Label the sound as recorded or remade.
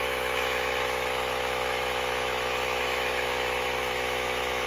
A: remade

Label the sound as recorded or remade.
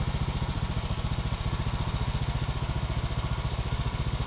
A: recorded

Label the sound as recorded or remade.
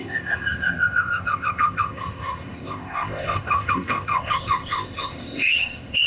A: remade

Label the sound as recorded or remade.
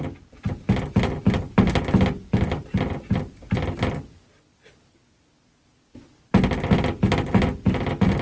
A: recorded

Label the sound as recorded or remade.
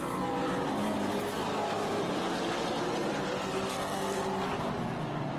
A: recorded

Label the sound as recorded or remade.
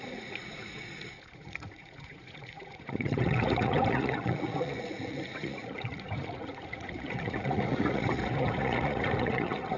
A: remade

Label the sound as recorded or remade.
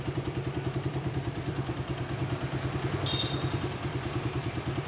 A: remade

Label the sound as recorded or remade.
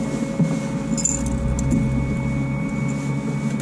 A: recorded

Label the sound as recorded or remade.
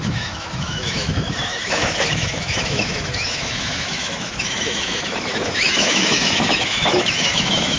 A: remade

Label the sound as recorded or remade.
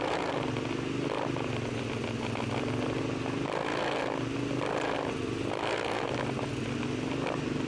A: recorded